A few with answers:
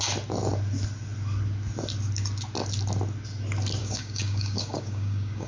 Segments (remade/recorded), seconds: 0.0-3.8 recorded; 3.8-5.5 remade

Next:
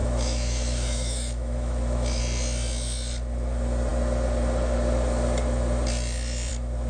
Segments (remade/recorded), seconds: 0.0-2.2 remade; 2.2-6.9 recorded